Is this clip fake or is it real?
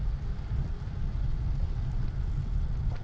real